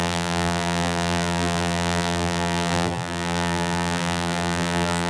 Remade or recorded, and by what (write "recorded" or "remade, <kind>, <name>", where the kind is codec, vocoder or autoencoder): remade, vocoder, BigVGAN v2